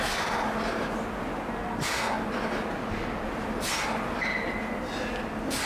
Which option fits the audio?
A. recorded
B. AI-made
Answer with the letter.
A